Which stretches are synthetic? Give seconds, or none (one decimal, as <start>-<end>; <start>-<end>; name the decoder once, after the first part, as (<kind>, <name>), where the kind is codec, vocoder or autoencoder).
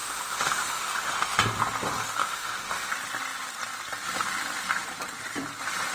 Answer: 0.0-1.4 (autoencoder, DAC-VAE); 2.2-2.9